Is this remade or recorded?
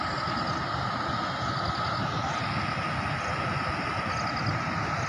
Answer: recorded